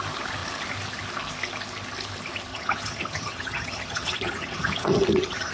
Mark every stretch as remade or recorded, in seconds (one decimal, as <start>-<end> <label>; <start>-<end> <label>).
0.0-2.5 recorded; 2.5-5.5 remade